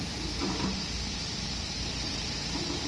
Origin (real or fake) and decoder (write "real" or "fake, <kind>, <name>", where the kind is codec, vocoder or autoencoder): fake, vocoder, BigVGAN v2